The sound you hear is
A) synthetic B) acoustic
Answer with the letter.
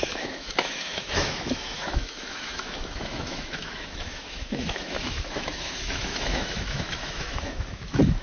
A